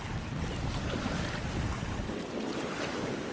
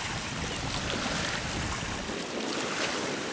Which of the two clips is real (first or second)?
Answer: first